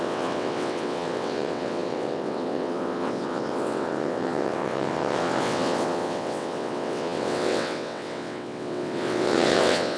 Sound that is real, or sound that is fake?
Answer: fake